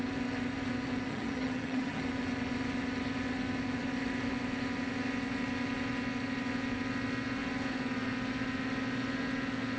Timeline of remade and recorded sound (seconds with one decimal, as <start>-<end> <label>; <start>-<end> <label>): 0.0-1.1 recorded; 1.1-2.0 remade; 2.0-9.8 recorded